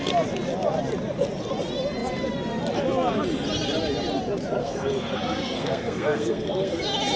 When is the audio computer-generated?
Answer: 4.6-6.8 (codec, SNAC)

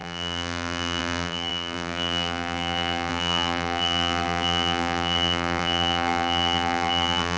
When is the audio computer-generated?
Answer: 0.0-7.4 (vocoder, BigVGAN v2)

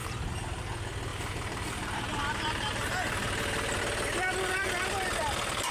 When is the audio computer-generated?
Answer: 0.0-0.6 (vocoder, BigVGAN v2); 1.1-3.8

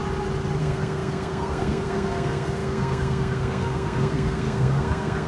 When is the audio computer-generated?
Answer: 0.6-5.3 (codec, SNAC)

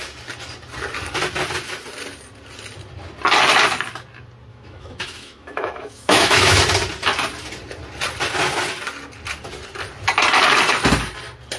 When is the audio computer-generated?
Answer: 4.5-6.6 (autoencoder, DAC-VAE)

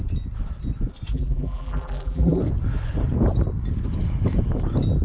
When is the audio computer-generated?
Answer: 1.1-2.4 (vocoder, BigVGAN v2)

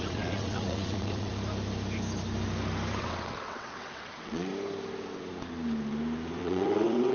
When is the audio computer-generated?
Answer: 0.0-1.3 (vocoder, WaveNeXt); 3.0-4.5; 6.4-7.1